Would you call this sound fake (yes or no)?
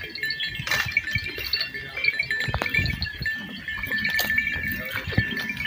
no